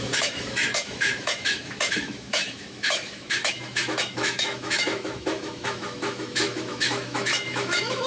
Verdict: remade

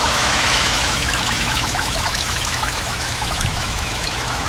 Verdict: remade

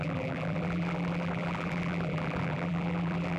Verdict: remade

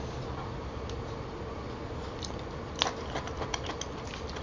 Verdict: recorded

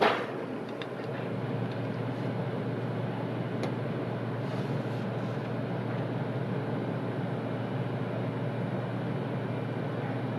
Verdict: recorded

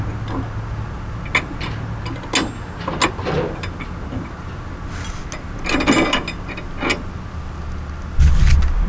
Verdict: recorded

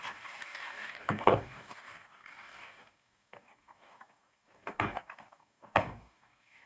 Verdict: remade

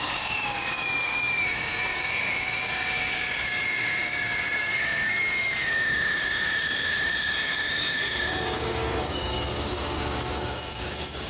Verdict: remade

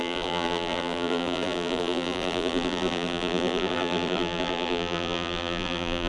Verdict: remade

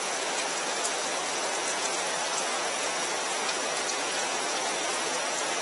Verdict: remade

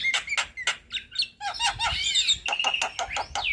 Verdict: recorded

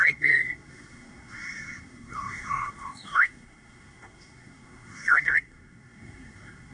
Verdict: remade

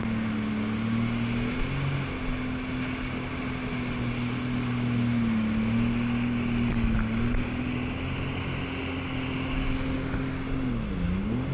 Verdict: recorded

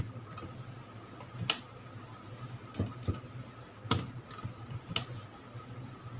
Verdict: recorded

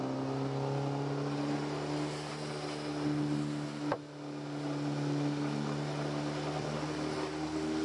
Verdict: recorded